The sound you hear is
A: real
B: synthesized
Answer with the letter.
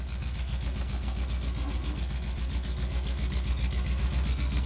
B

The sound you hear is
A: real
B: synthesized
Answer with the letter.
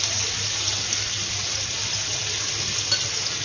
A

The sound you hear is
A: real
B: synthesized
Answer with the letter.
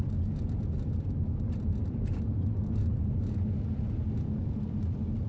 A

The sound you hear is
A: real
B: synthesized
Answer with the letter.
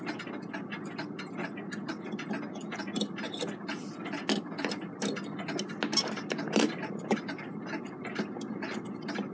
A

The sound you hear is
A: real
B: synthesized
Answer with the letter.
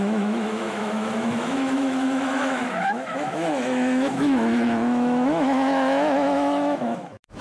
B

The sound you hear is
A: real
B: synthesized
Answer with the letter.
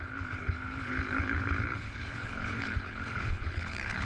B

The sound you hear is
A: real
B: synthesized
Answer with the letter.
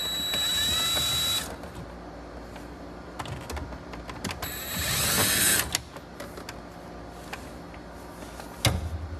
A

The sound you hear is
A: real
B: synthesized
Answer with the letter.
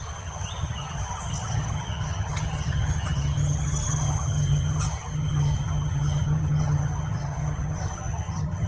B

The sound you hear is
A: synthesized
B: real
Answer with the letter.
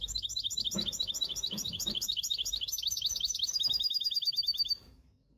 A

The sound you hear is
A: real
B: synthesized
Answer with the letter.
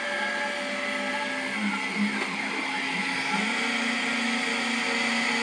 A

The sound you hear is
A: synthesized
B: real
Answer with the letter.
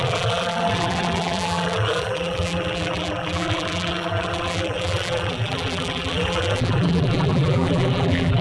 A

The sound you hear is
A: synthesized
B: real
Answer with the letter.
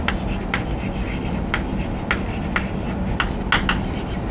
B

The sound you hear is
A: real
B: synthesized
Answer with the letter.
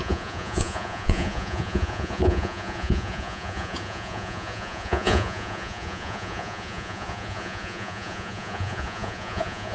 B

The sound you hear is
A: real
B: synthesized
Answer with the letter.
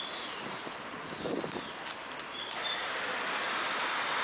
A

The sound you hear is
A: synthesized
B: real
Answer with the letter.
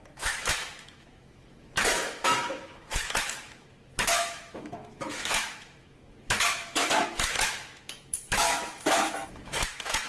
A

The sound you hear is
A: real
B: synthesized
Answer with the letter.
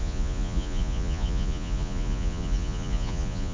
B